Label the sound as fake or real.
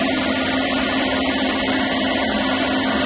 real